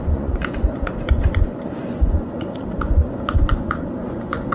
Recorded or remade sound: remade